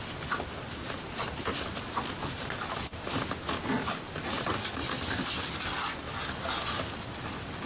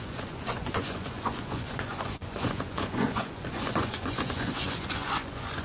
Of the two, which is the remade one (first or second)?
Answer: second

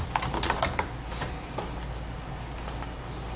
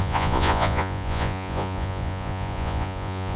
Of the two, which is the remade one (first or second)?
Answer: second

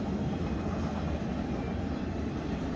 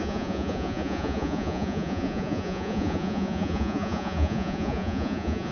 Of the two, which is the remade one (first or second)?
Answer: second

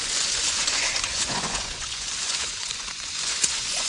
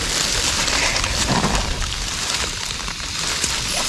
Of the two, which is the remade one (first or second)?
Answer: first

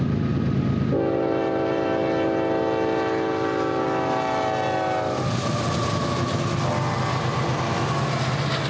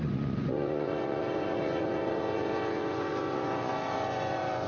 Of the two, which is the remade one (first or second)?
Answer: second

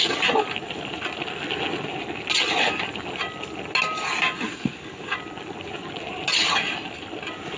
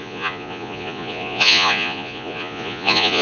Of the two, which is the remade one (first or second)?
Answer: second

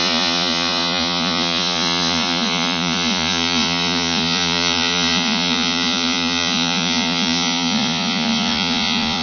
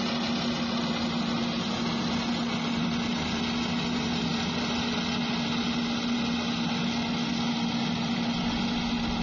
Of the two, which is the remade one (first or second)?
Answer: first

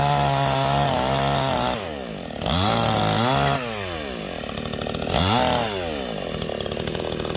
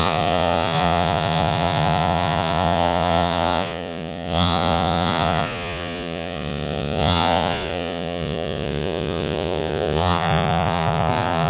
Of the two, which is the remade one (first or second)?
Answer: second